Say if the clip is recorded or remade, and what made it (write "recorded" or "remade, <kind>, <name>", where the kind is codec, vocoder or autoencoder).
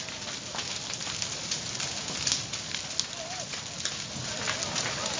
recorded